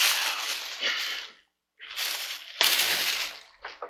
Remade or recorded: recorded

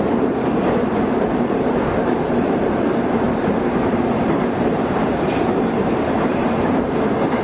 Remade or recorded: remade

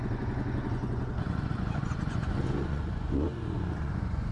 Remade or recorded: remade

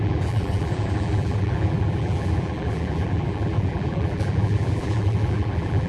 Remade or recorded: remade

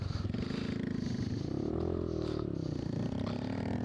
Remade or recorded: recorded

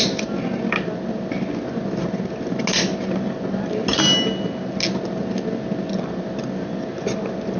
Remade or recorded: recorded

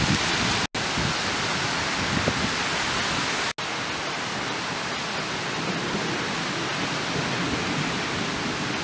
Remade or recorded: recorded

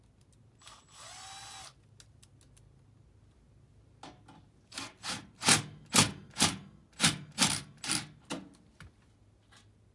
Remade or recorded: recorded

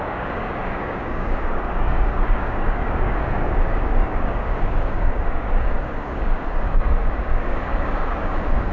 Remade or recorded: remade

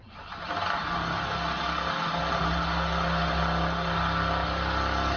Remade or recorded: recorded